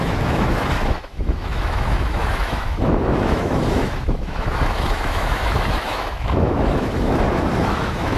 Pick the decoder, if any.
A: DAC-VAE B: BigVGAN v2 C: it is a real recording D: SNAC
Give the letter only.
A